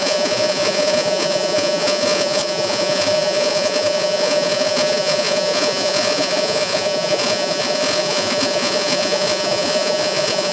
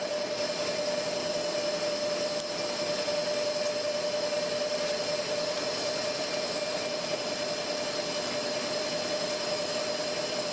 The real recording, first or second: second